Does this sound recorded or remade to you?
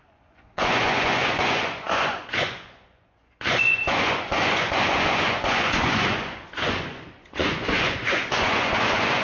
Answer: remade